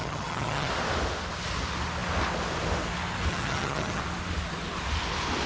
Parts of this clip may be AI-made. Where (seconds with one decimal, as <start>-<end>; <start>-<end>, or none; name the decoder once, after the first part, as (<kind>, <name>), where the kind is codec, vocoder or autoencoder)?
0.0-0.7 (vocoder, HiFi-GAN); 3.3-4.0

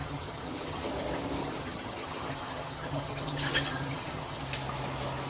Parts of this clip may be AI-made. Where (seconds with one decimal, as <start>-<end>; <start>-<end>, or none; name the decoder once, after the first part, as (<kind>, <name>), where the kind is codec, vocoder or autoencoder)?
0.0-0.9 (vocoder, HiFi-GAN); 1.4-4.4

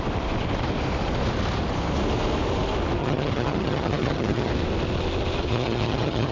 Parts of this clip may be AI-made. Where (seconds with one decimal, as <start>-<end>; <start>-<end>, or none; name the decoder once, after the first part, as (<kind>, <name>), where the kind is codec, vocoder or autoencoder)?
3.0-4.5 (vocoder, HiFi-GAN); 5.5-6.3

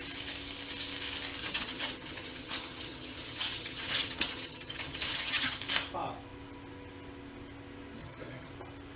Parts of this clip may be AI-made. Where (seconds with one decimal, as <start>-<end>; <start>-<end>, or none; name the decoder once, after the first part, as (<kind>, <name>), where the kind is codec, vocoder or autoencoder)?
1.4-5.6 (vocoder, HiFi-GAN); 8.0-8.5